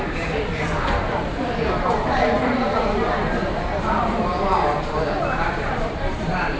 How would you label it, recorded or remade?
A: remade